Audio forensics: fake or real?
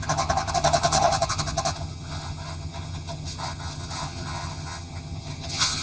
fake